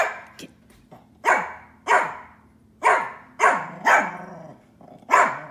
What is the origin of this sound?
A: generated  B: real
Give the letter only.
B